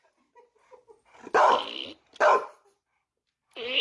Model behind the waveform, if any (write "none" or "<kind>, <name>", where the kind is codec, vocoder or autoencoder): none